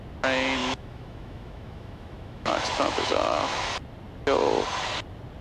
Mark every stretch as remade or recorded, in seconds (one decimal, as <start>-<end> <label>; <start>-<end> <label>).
0.0-0.6 recorded; 0.6-3.7 remade; 3.7-5.4 recorded